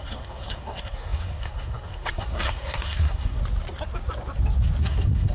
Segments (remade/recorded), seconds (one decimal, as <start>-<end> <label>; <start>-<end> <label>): 0.0-3.4 remade; 3.4-4.8 recorded; 4.8-5.3 remade